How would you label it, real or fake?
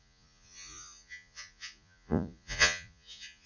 fake